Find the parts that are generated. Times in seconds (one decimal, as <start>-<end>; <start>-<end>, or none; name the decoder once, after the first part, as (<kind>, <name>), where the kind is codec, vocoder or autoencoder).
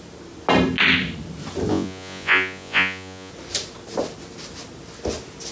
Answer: 1.7-3.3 (vocoder, Vocos)